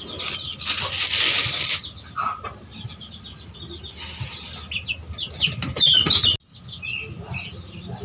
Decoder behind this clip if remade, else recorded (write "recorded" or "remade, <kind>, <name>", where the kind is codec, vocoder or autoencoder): recorded